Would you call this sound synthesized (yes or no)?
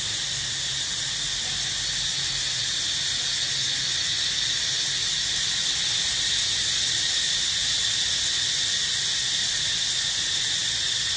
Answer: no